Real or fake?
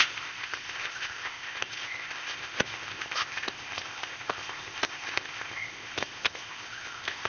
fake